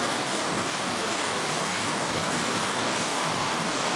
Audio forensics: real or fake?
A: fake